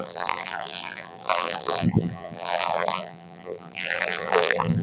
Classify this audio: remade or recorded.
remade